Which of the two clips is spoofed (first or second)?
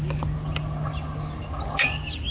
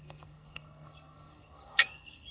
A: second